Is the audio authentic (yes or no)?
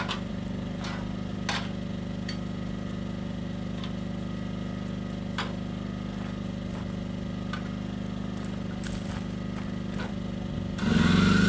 yes